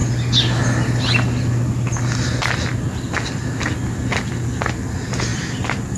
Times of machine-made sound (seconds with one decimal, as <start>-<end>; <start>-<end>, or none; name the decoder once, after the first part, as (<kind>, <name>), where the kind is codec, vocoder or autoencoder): none